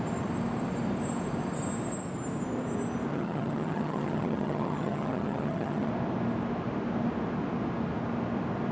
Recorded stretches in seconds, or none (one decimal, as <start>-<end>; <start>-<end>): 0.0-3.1; 5.9-8.7